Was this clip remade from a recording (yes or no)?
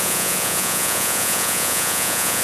yes